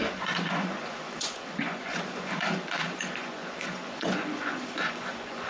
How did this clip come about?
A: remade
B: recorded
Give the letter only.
A